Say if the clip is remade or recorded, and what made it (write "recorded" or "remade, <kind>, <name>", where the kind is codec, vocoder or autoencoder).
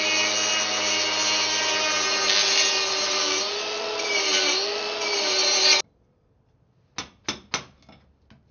recorded